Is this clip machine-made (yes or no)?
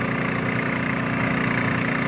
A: no